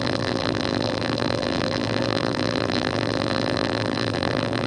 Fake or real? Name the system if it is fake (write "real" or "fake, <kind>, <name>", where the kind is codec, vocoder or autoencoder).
fake, vocoder, BigVGAN v2